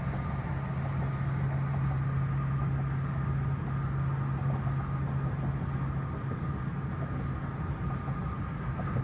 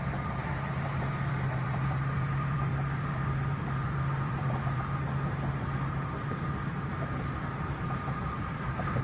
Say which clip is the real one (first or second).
first